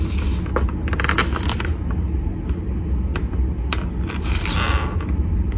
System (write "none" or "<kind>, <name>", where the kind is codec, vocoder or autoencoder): none